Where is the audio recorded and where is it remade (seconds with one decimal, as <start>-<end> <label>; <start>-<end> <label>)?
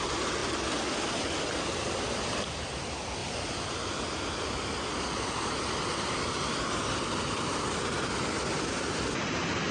0.0-9.7 recorded